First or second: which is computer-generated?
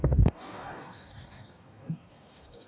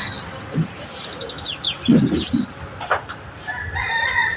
first